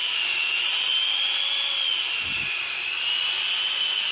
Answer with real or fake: real